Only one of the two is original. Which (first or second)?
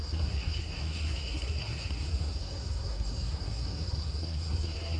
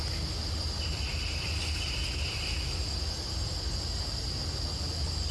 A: second